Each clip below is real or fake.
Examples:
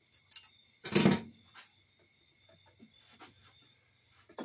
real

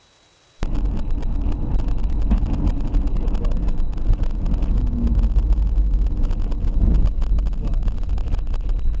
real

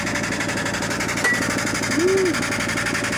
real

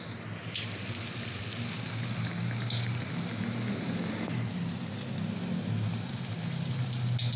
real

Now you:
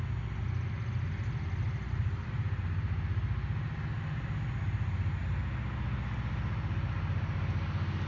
real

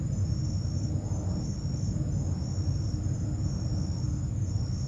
real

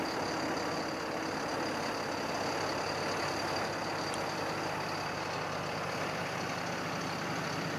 real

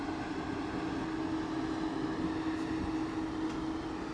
real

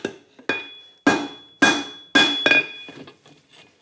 real